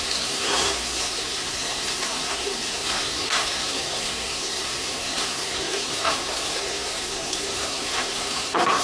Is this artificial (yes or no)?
yes